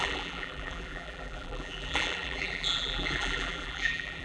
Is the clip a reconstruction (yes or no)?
yes